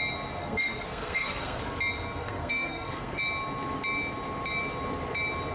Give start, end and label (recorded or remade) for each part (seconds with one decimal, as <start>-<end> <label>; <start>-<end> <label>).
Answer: 0.0-0.4 recorded; 0.4-1.6 remade; 1.6-2.2 recorded; 2.2-3.2 remade; 3.2-5.5 recorded